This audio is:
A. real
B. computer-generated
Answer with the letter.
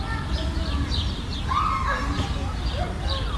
A